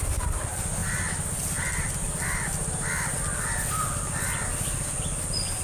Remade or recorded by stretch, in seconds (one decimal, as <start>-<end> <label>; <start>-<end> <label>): 0.0-5.6 recorded